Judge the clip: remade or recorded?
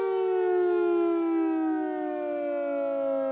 recorded